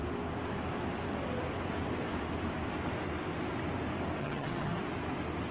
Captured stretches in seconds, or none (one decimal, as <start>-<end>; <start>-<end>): 0.0-4.2; 4.8-5.5